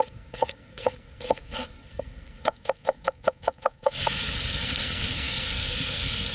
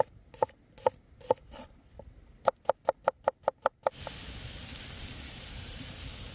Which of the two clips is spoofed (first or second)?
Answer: first